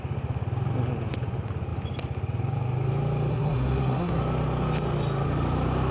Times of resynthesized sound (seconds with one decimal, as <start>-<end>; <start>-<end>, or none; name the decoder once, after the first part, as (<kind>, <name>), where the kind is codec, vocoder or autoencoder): 3.3-4.2 (codec, SNAC)